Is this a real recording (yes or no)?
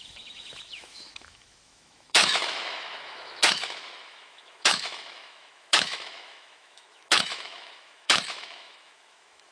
no